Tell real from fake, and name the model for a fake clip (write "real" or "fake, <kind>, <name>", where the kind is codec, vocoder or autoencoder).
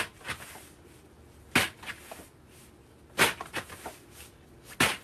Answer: real